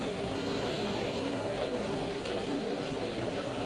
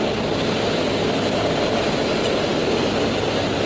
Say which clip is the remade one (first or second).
first